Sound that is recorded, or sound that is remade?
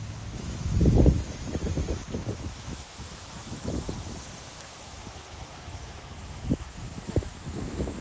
remade